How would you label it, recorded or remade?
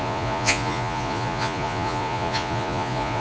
remade